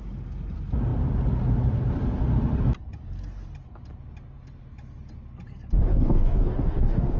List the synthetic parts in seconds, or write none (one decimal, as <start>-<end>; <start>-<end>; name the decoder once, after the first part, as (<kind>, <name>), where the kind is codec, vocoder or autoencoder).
5.9-7.2 (codec, DAC)